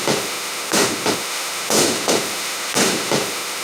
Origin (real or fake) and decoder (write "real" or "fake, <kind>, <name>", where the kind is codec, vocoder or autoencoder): fake, autoencoder, DAC-VAE